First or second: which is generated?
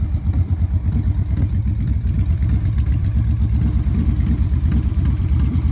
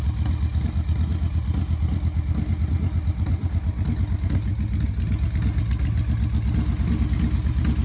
first